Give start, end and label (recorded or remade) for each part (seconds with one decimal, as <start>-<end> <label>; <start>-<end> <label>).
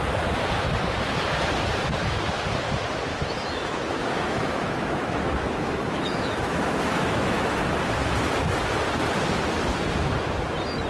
0.0-3.1 recorded; 3.1-7.6 remade; 7.6-10.9 recorded